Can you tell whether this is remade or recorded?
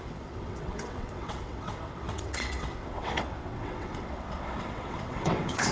remade